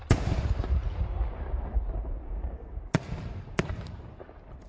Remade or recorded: remade